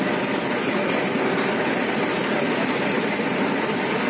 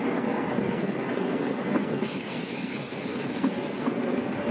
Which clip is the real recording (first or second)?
first